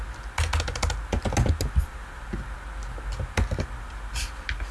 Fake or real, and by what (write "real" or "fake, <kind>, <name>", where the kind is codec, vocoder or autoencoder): real